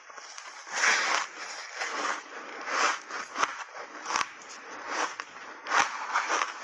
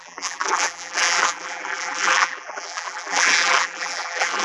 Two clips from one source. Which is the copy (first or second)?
second